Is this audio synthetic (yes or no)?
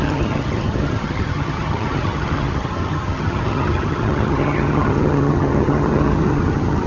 yes